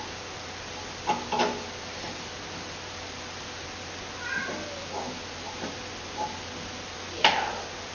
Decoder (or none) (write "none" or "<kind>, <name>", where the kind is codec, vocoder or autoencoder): none